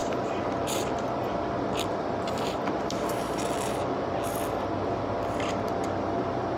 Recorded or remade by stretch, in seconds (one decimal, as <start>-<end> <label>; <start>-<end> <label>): 0.0-4.0 remade; 4.0-6.6 recorded